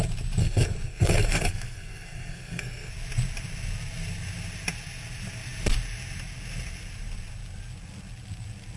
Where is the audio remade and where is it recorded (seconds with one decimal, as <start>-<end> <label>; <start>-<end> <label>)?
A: 0.0-0.4 recorded; 0.4-2.9 remade; 2.9-8.8 recorded